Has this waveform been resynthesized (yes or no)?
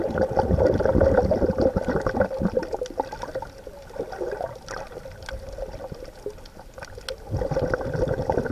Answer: no